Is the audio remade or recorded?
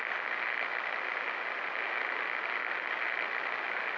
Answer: recorded